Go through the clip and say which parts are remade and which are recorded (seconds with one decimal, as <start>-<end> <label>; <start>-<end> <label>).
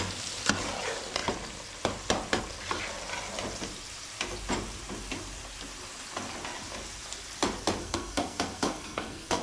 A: 0.0-7.8 recorded; 7.8-9.4 remade